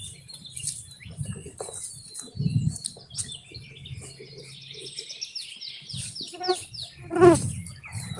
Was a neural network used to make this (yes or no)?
no